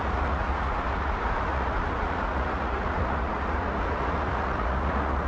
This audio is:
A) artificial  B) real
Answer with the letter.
A